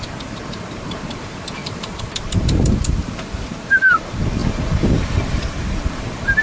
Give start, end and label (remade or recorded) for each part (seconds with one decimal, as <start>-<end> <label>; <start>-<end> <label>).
0.0-6.4 remade